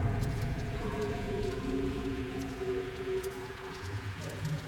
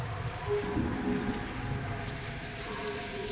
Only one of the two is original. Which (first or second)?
second